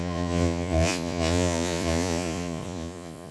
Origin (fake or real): fake